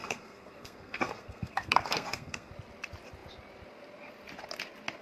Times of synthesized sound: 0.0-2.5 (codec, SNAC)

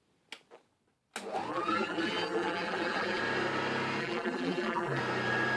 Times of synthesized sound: 1.5-3.2 (vocoder, BigVGAN v2); 4.0-5.0

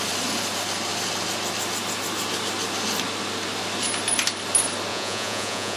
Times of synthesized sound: 4.9-5.8 (vocoder, Vocos)